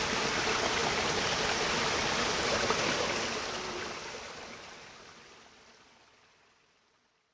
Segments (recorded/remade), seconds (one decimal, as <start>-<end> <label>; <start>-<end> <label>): 0.0-7.3 recorded